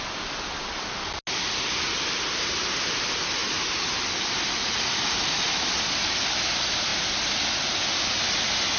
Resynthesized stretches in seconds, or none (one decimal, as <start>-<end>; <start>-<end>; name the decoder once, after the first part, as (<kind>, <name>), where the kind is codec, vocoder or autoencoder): none